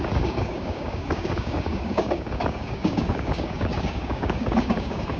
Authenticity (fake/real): fake